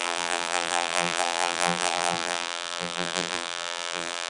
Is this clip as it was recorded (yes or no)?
no